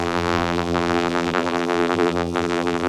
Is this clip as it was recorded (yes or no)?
no